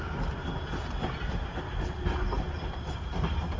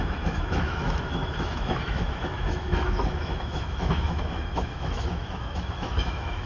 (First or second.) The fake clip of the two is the second